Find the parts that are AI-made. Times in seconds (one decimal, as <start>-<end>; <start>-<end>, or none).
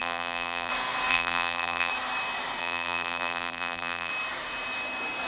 0.0-0.7; 1.1-1.9; 2.6-4.1